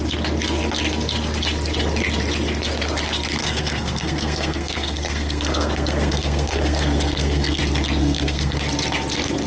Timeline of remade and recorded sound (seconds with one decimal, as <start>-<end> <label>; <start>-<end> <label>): 0.0-3.4 recorded; 3.4-7.6 remade; 7.6-8.0 recorded; 8.0-8.6 remade; 8.6-9.5 recorded